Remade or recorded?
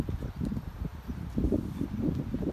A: recorded